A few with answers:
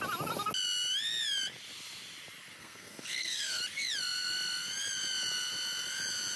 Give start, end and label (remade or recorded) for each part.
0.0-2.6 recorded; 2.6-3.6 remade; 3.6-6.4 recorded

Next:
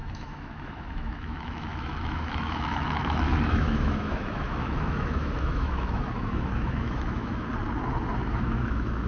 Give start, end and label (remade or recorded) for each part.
0.0-7.5 remade; 7.5-8.3 recorded; 8.3-9.1 remade

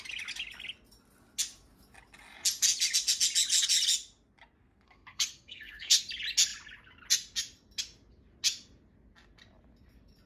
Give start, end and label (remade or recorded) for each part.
0.0-4.6 recorded; 4.6-6.0 remade; 6.0-10.3 recorded

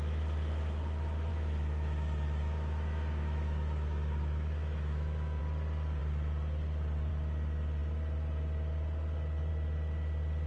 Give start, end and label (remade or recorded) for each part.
0.0-1.3 recorded; 1.3-5.4 remade; 5.4-10.5 recorded